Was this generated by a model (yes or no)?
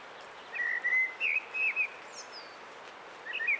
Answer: no